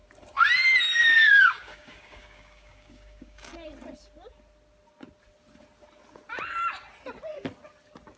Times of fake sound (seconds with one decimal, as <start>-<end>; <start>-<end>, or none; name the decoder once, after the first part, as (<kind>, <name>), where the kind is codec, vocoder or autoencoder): 1.0-3.5 (codec, DAC)